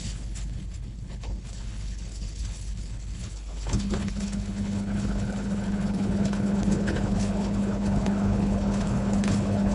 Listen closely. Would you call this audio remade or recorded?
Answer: remade